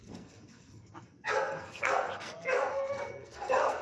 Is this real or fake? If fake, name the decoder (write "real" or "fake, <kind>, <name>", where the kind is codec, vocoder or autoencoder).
fake, codec, SNAC